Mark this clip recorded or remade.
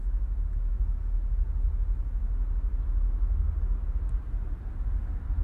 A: recorded